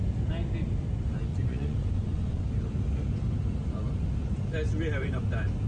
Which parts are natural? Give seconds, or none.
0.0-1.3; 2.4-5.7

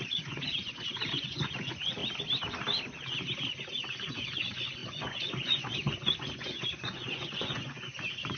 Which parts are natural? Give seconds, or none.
2.0-4.0

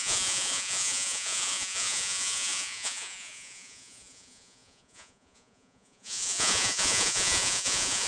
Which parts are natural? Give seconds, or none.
none

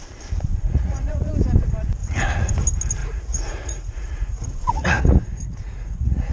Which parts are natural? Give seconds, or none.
0.0-0.5; 1.3-2.0; 2.5-3.0

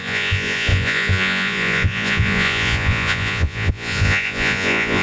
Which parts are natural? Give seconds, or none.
none